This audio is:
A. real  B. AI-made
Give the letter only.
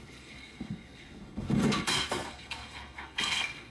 B